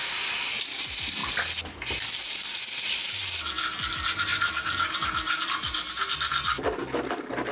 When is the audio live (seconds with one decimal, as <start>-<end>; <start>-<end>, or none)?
0.0-7.5